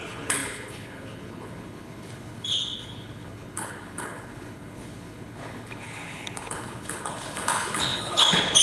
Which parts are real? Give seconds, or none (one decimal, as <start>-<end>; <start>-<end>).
none